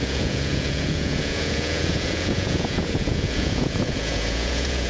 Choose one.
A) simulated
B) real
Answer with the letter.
A